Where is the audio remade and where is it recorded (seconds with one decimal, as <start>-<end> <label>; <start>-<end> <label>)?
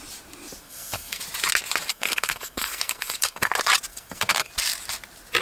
0.0-0.6 recorded; 0.6-1.2 remade; 1.2-1.9 recorded; 1.9-3.5 remade; 3.5-3.9 recorded; 3.9-4.5 remade; 4.5-5.4 recorded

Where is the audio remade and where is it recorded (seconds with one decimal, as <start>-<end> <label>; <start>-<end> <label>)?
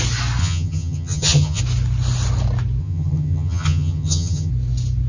0.0-0.4 recorded; 0.4-1.6 remade; 1.6-2.8 recorded; 2.8-4.5 remade; 4.5-5.1 recorded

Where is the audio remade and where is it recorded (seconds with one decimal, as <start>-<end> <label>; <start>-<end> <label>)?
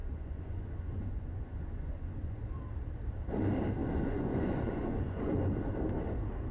0.0-2.4 remade; 2.4-3.8 recorded; 3.8-5.6 remade; 5.6-6.5 recorded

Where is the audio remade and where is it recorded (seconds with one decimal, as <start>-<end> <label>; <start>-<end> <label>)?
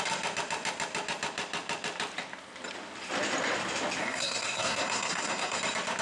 0.0-4.0 recorded; 4.0-5.6 remade; 5.6-6.0 recorded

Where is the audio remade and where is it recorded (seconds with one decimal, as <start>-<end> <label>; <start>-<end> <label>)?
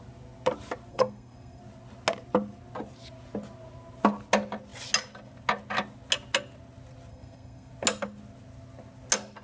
0.0-0.9 recorded; 0.9-1.6 remade; 1.6-7.1 recorded; 7.1-7.7 remade; 7.7-9.4 recorded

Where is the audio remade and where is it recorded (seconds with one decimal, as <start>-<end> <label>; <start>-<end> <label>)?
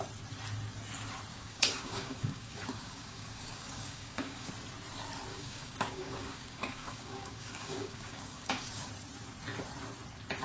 0.0-1.3 recorded; 1.3-4.5 remade; 4.5-5.3 recorded; 5.3-8.9 remade; 8.9-10.4 recorded